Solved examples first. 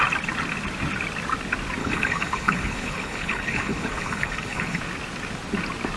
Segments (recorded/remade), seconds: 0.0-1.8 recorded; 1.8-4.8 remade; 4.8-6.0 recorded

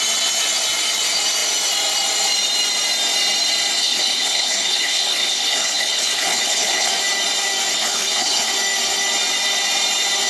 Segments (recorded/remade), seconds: 0.0-3.8 recorded; 3.8-6.9 remade; 6.9-7.7 recorded; 7.7-8.5 remade; 8.5-10.3 recorded

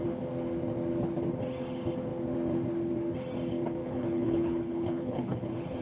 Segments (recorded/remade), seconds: 0.0-3.8 recorded; 3.8-5.8 remade

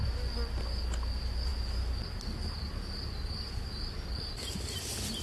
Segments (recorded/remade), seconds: 0.0-5.2 recorded

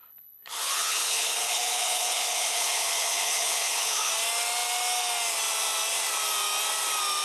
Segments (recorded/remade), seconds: 0.0-4.1 remade; 4.1-7.2 recorded

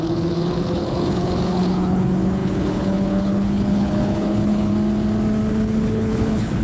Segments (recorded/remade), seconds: 0.0-4.7 remade; 4.7-5.5 recorded; 5.5-6.6 remade

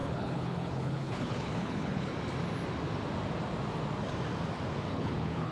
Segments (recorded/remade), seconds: 0.0-2.1 remade; 2.1-4.9 recorded; 4.9-5.5 remade

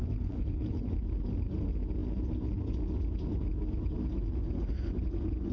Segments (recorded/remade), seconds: 0.0-0.9 remade; 0.9-5.5 recorded